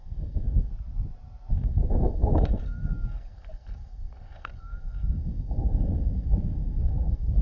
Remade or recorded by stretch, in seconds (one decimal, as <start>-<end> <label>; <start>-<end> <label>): 0.0-0.7 remade; 0.7-1.5 recorded; 1.5-7.4 remade